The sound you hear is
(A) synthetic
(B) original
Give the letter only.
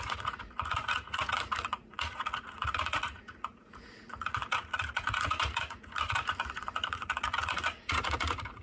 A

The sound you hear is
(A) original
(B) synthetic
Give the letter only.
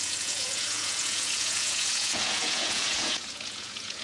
B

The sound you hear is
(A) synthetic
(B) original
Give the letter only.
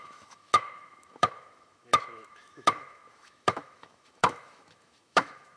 A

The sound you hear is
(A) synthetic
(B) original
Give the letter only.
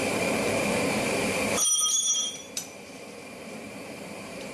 A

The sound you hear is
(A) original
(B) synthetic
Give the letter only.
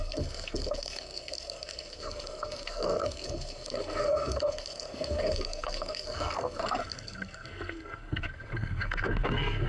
B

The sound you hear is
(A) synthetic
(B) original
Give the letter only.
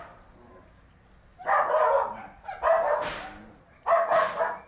B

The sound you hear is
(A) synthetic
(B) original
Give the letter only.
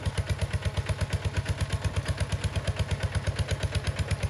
B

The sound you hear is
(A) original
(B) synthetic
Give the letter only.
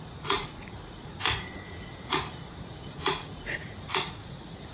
B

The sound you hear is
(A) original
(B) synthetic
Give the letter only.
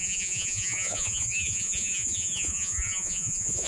B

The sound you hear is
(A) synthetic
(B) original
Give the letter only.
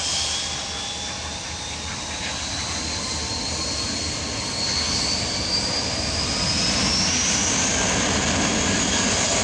B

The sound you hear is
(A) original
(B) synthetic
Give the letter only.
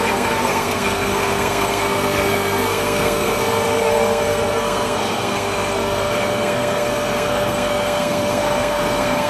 B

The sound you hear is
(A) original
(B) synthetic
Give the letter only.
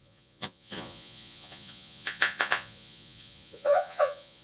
B